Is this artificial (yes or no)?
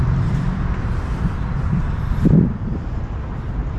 yes